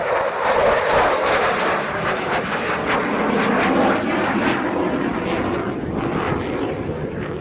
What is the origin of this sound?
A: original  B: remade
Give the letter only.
A